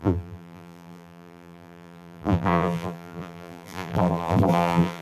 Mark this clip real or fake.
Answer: fake